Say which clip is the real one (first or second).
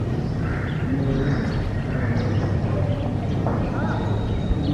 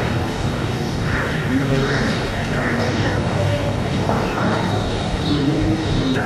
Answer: first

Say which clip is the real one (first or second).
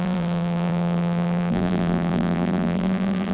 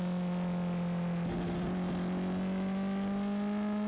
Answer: second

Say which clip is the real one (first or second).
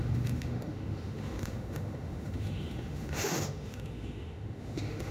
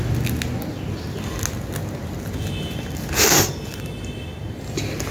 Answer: second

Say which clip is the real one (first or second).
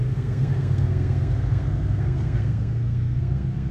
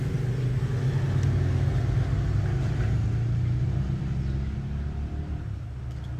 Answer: second